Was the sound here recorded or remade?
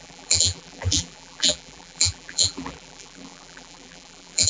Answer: remade